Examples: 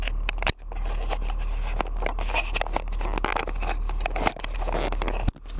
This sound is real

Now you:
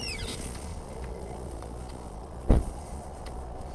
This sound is fake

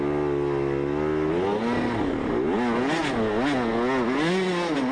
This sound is real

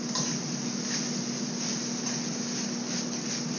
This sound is real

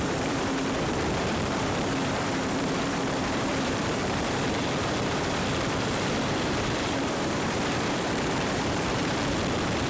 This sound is fake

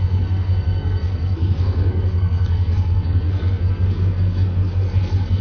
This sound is fake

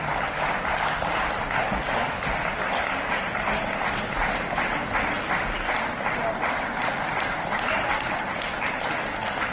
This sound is real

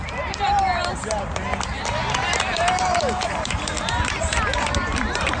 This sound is fake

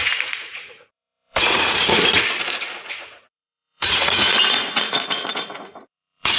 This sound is fake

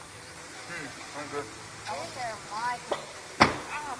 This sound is real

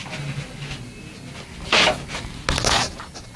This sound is real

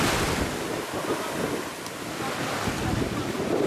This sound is real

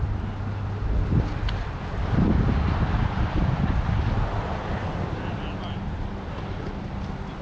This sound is real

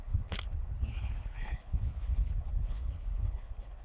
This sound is fake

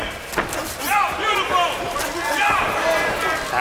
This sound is real